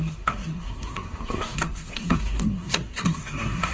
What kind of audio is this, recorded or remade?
remade